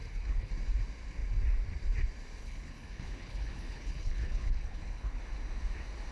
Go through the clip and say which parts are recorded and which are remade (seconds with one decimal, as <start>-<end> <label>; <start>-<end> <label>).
0.0-0.5 remade; 0.5-2.4 recorded; 2.4-5.2 remade; 5.2-6.1 recorded